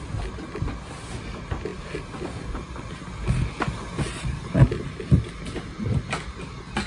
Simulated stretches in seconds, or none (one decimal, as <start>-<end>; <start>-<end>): none